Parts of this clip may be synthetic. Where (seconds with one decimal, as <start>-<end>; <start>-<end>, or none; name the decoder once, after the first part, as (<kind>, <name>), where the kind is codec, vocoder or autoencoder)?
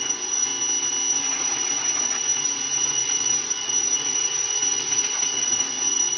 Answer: 0.0-0.5 (vocoder, Vocos); 1.1-6.2